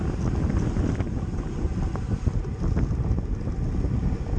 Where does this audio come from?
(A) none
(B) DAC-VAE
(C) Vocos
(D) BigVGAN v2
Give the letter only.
A